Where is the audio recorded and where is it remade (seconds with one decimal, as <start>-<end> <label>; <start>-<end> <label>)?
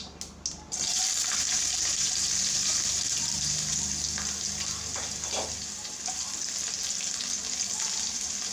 0.0-0.9 recorded; 0.9-3.7 remade; 3.7-8.5 recorded